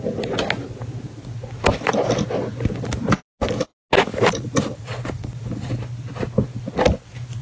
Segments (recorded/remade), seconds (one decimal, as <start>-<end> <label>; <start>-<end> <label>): 0.0-4.1 recorded; 4.1-5.7 remade; 5.7-7.4 recorded